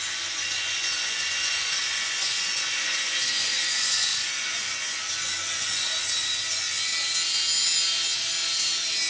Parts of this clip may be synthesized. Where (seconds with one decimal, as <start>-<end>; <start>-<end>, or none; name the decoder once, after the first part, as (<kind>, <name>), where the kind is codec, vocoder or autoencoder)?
0.0-5.9 (vocoder, Vocos); 6.5-6.9